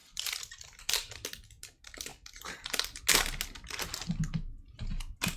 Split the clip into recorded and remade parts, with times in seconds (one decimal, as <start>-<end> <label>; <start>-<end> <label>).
0.0-0.8 remade; 0.8-2.1 recorded; 2.1-3.0 remade; 3.0-5.4 recorded